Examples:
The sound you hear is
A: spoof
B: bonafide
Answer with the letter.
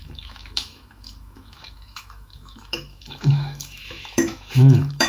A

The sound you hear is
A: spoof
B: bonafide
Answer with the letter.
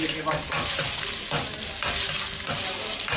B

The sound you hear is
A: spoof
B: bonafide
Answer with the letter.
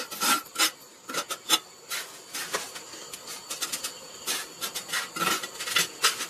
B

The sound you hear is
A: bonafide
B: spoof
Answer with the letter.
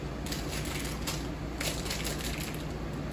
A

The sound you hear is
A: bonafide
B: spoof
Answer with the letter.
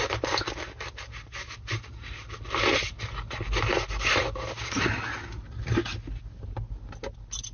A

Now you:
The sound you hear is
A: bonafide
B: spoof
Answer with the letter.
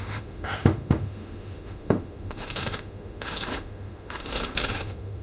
B